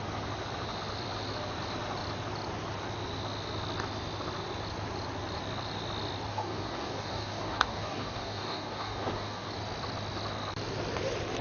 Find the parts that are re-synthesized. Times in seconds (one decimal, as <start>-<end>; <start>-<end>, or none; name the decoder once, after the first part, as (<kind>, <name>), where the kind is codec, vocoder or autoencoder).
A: 6.3-9.5 (codec, DAC)